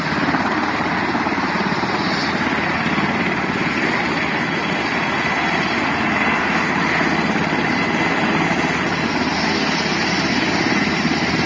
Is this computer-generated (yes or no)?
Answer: no